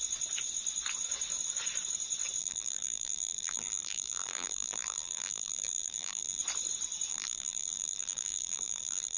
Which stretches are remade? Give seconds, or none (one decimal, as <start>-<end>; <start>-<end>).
2.4-6.4; 7.1-9.2